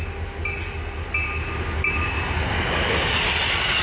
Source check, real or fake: real